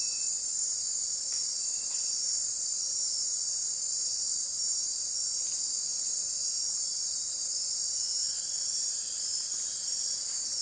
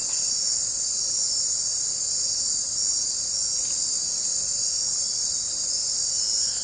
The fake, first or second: first